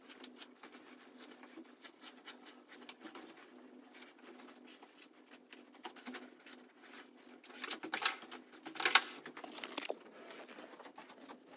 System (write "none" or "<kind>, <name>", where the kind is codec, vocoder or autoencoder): none